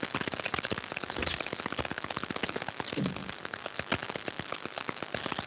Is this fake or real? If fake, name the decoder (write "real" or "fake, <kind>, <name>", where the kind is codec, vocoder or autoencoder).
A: real